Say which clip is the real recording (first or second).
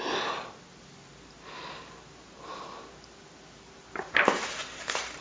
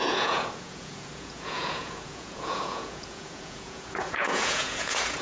first